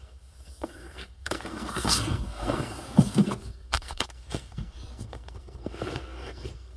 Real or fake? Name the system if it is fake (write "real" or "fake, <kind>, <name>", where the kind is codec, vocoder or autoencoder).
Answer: fake, codec, SNAC